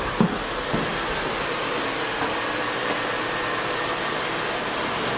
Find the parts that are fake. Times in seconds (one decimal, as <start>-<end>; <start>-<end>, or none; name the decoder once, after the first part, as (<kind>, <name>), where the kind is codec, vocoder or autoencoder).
none